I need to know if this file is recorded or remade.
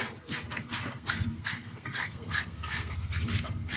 remade